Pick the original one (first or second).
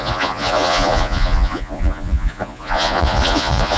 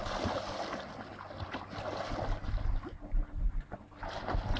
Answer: second